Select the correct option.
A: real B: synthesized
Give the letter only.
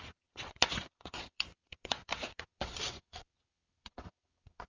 B